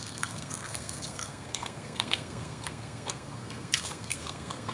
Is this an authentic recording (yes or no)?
no